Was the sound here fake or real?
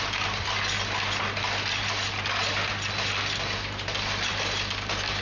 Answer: real